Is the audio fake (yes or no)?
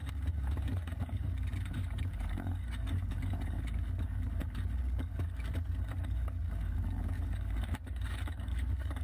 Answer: yes